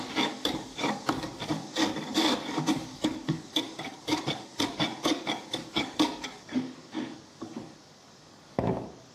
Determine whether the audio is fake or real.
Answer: fake